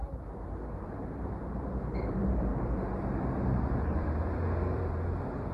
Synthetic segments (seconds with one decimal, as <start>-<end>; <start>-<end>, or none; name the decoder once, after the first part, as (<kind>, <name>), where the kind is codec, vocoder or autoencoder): 0.0-2.5 (vocoder, BigVGAN v2); 3.6-5.5